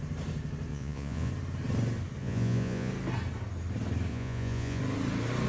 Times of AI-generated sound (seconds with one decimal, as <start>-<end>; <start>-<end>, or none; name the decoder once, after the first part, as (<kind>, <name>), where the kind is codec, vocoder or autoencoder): 0.7-1.3 (vocoder, Vocos); 2.2-2.9; 4.1-4.8